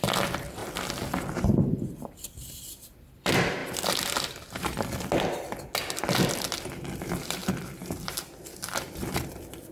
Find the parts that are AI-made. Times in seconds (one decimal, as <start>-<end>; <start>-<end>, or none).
0.0-0.6; 1.4-3.6; 6.3-9.7